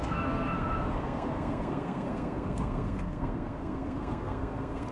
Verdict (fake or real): fake